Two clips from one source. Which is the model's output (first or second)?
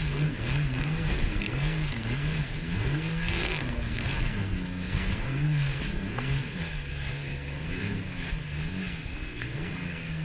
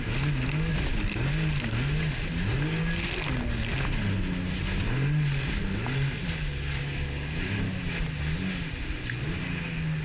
first